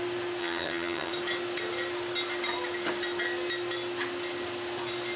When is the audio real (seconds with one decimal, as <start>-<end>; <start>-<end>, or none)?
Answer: 0.0-0.4; 1.1-5.2